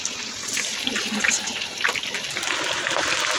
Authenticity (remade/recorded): recorded